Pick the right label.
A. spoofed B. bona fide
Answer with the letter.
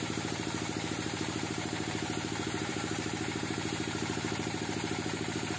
A